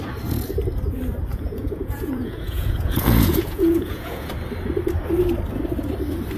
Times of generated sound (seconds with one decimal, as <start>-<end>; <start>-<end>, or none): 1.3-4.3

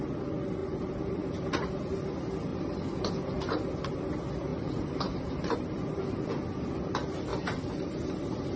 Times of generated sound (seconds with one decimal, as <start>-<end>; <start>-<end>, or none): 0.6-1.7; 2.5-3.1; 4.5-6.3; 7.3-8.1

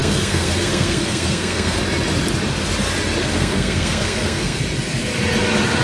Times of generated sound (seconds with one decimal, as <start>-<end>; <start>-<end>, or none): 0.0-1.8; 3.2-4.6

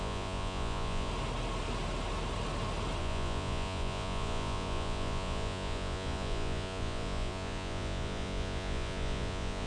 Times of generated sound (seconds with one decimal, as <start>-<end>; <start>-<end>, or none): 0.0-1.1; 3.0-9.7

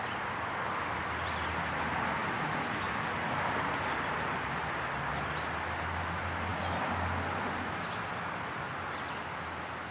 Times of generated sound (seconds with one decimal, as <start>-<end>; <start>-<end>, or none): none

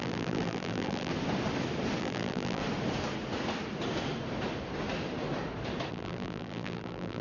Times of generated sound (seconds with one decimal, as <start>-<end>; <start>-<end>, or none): 0.0-1.1; 2.0-2.6; 5.9-7.2

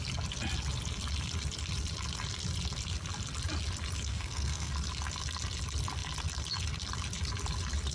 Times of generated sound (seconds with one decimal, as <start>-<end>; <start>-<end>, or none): 4.1-4.7